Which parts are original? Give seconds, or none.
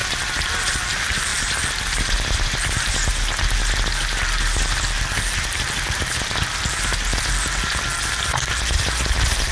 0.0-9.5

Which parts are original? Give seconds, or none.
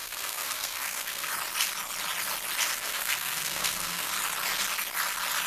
1.3-2.7; 4.1-5.5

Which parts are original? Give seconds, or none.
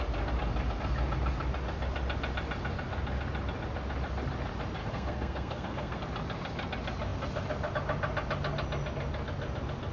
0.0-4.8; 6.0-9.9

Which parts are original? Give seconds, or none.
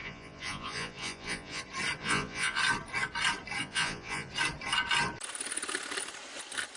1.6-2.0; 2.6-3.6; 4.3-6.8